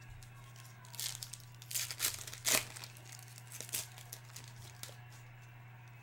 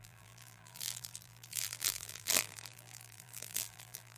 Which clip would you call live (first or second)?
first